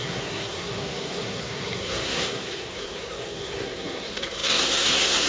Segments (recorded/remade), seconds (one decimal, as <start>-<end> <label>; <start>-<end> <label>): 0.0-5.3 remade